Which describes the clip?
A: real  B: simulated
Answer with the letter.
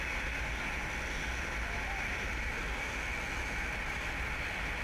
A